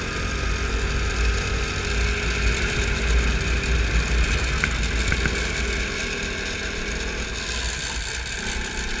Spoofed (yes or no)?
no